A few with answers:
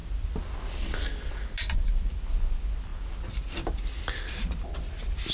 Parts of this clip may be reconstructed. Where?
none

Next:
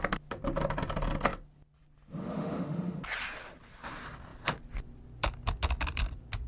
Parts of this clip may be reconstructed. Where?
2.2-3.0 (autoencoder, DAC-VAE)

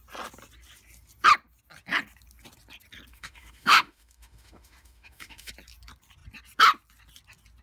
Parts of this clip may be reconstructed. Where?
3.1-5.5 (autoencoder, DAC-VAE)